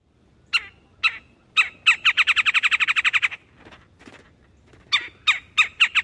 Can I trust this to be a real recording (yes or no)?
yes